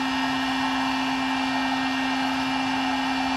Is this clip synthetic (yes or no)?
no